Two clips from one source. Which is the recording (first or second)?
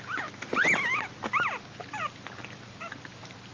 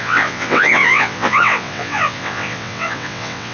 first